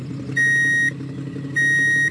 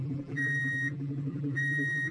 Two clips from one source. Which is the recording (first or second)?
first